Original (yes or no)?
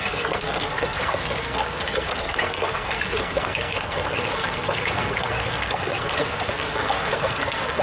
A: no